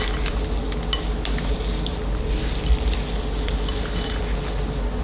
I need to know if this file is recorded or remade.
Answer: recorded